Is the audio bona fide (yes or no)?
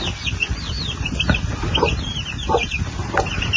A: yes